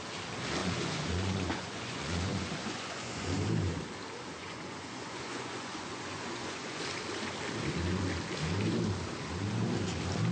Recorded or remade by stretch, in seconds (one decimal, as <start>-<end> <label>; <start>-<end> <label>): 0.0-0.6 recorded; 0.6-3.3 remade; 3.3-4.4 recorded; 4.4-6.8 remade; 6.8-10.3 recorded